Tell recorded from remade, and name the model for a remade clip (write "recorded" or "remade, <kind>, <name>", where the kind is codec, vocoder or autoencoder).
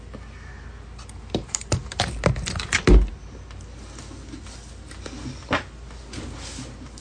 recorded